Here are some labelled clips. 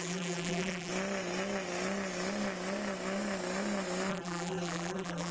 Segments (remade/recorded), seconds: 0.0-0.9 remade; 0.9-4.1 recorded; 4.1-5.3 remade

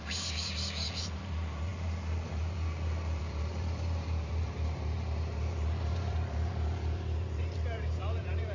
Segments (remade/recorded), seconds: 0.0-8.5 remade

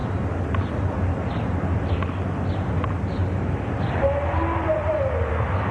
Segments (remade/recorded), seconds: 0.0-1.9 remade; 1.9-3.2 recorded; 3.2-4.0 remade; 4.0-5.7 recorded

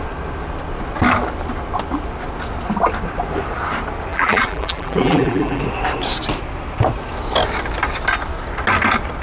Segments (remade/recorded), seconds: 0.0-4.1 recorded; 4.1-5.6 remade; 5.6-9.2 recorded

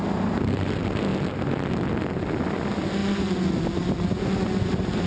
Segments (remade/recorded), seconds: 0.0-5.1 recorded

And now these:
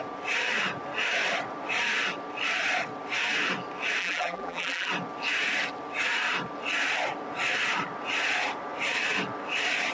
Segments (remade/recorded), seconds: 0.0-4.0 recorded; 4.0-4.9 remade; 4.9-9.9 recorded

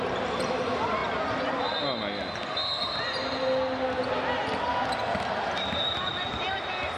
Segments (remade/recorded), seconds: 0.0-4.4 recorded; 4.4-6.1 remade; 6.1-7.0 recorded

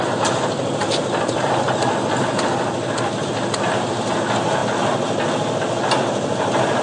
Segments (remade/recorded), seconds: 0.0-0.8 recorded; 0.8-3.3 remade; 3.3-6.8 recorded